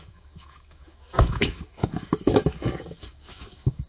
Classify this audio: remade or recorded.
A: remade